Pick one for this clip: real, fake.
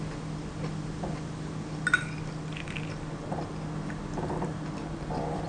real